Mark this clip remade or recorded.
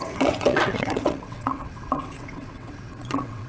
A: remade